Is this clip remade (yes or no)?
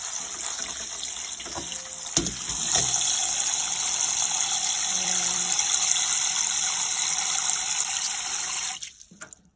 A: no